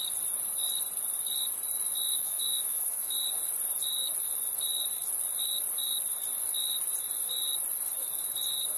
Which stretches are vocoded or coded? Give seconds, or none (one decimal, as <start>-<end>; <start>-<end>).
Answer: 2.1-3.1